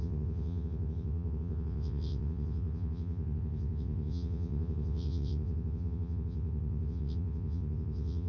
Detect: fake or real fake